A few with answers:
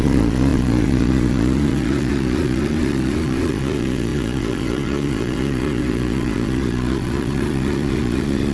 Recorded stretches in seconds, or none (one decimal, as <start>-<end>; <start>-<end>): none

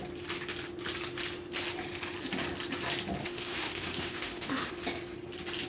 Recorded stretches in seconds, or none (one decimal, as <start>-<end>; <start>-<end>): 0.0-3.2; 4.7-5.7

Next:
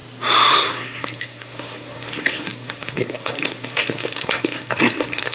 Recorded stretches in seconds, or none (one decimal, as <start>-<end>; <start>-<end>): 0.0-0.5

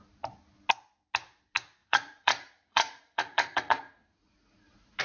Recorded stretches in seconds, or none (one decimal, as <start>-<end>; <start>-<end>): 0.0-1.8